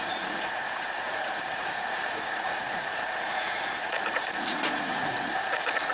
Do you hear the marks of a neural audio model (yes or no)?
yes